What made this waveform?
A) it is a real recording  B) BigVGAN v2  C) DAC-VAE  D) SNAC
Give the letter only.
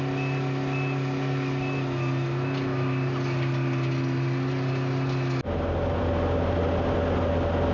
A